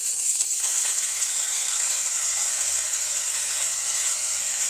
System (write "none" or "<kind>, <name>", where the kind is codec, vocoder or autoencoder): codec, SNAC